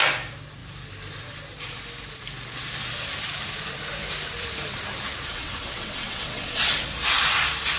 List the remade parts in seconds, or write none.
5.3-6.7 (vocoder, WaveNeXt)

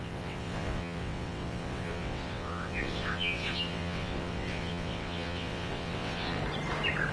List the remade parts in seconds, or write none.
0.0-6.4 (vocoder, WaveNeXt)